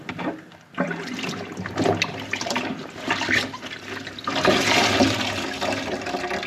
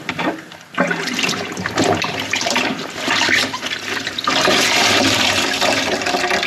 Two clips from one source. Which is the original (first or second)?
first